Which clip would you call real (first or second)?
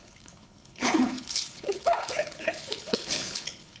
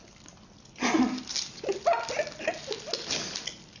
second